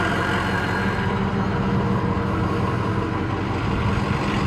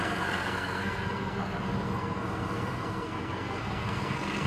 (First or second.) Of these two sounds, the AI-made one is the second